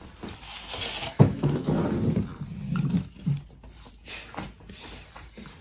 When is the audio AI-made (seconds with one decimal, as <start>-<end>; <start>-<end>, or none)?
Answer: 1.0-1.8